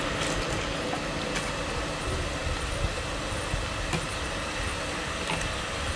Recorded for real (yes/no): yes